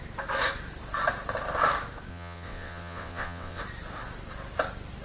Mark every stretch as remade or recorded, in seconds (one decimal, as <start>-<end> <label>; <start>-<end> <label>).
0.0-2.1 recorded; 2.1-3.6 remade; 3.6-5.0 recorded